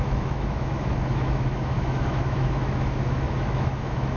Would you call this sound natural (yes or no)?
no